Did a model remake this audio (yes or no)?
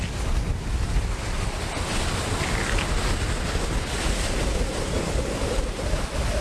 no